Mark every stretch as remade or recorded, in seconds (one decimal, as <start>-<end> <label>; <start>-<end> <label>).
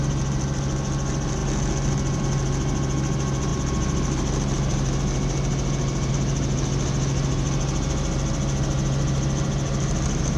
0.0-10.4 recorded